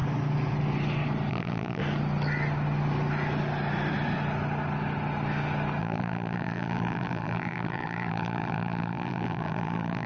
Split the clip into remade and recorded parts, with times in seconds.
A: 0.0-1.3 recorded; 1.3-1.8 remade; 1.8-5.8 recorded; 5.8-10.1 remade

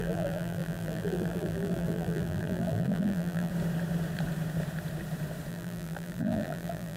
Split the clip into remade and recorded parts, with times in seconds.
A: 0.0-3.5 remade; 3.5-5.5 recorded; 5.5-7.0 remade

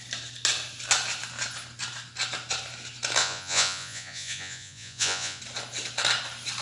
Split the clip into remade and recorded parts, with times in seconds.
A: 0.0-3.2 recorded; 3.2-5.4 remade; 5.4-6.6 recorded

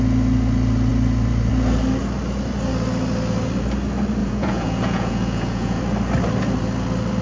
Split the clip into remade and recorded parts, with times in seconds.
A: 0.0-4.2 recorded; 4.2-5.8 remade; 5.8-7.2 recorded

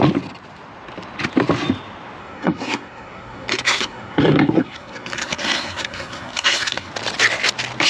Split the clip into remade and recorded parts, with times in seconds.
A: 0.0-2.2 recorded; 2.2-6.9 remade; 6.9-7.9 recorded

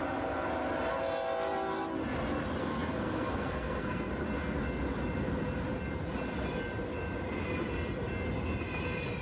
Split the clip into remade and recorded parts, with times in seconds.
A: 0.0-2.6 recorded; 2.6-4.1 remade; 4.1-9.2 recorded

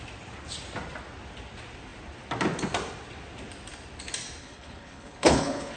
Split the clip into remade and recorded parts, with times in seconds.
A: 0.0-4.4 recorded; 4.4-5.8 remade

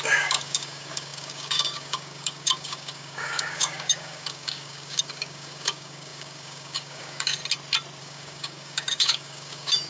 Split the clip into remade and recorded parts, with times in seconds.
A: 0.0-7.4 remade; 7.4-8.0 recorded; 8.0-9.9 remade